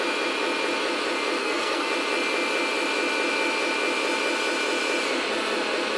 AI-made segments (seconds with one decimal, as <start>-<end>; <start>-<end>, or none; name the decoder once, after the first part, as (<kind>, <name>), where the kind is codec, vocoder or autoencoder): 1.4-1.9 (codec, SNAC)